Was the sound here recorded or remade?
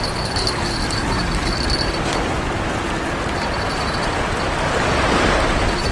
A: recorded